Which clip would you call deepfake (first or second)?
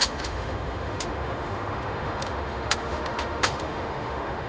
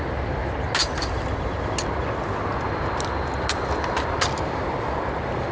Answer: first